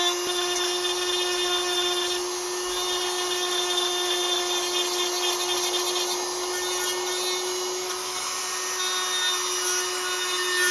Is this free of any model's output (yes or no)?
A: yes